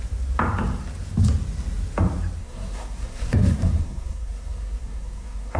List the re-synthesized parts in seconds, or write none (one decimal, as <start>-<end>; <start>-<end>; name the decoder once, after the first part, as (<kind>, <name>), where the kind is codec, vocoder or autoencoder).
2.4-5.6 (codec, SNAC)